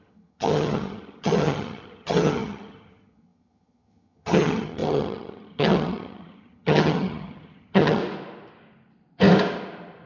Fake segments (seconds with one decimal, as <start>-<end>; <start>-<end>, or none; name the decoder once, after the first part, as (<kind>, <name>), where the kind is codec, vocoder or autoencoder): 0.0-8.0 (vocoder, HiFi-GAN)